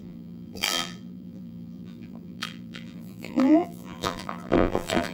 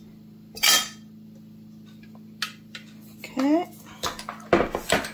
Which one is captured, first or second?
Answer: second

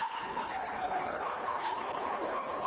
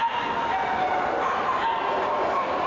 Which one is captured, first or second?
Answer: second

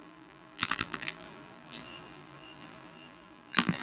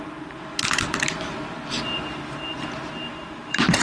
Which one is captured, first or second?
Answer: second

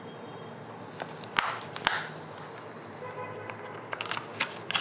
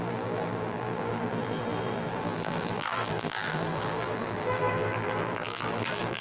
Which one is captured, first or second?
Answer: first